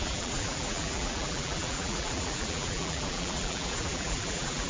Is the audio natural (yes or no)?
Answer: no